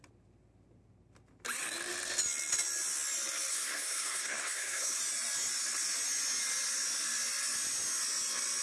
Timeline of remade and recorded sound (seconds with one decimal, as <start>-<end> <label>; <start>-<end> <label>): 0.0-3.5 recorded; 3.5-5.0 remade; 5.0-8.6 recorded